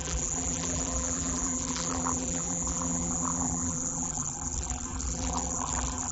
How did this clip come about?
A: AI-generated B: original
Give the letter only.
A